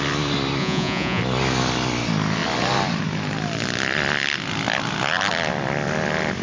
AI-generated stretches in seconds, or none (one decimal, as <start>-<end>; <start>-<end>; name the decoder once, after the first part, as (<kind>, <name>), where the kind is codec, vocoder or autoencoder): 0.6-1.2 (vocoder, Vocos)